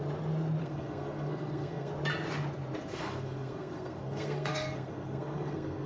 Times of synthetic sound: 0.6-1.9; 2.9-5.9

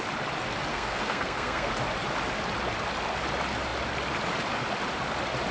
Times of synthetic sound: 0.7-1.7

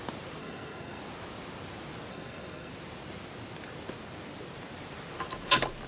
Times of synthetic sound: 0.4-1.0; 2.1-2.7

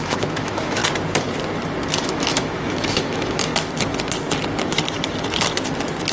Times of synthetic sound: 0.0-0.8; 2.0-3.5

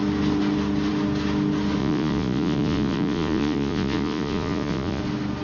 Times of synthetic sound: 1.8-5.0

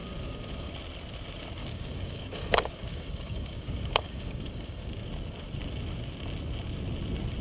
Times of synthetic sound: 0.0-0.7; 1.6-5.1

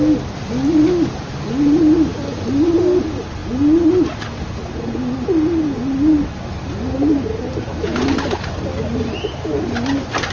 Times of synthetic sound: none